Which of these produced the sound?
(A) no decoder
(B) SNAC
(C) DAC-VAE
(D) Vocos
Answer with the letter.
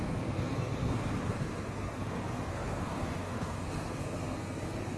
B